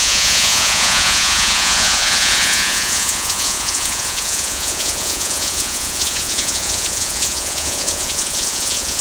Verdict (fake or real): fake